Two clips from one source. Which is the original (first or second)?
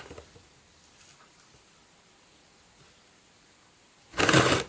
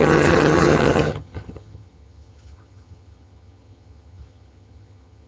first